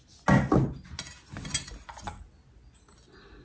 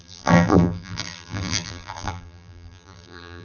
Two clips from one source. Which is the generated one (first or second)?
second